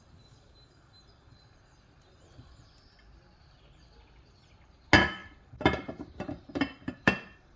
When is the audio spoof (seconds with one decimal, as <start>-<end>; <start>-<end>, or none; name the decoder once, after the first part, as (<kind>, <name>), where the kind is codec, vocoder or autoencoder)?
5.2-7.6 (vocoder, BigVGAN v2)